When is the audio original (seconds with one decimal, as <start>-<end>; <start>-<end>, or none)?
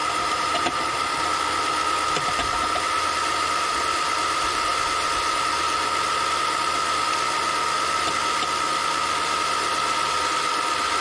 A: 1.1-11.0